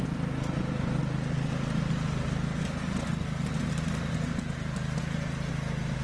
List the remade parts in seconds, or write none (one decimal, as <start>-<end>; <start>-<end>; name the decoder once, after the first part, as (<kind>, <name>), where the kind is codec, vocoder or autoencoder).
none